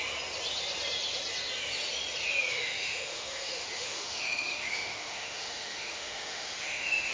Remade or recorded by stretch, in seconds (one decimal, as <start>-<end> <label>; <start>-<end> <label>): 0.0-2.5 recorded; 2.5-7.1 remade